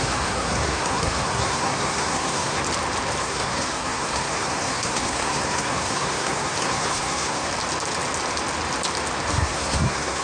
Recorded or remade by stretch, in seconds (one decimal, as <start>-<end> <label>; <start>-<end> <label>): 0.0-2.6 remade; 2.6-3.2 recorded; 3.2-7.5 remade; 7.5-9.3 recorded; 9.3-10.2 remade